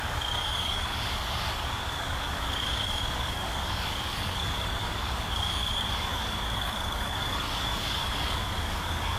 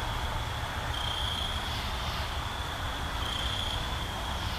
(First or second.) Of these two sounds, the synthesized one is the first